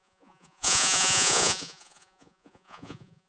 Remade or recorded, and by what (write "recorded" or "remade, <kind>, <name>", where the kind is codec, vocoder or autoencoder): remade, vocoder, Vocos